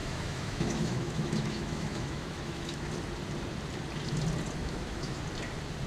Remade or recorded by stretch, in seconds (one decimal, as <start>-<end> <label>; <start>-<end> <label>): 0.0-2.9 remade; 2.9-4.6 recorded; 4.6-5.2 remade; 5.2-5.9 recorded